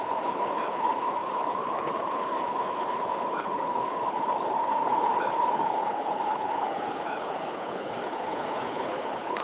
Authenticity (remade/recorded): remade